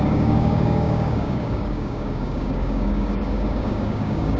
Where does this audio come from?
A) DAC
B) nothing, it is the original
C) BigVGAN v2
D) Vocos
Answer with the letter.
A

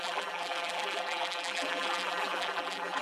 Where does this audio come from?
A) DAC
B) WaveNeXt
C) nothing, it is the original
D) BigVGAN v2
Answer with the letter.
D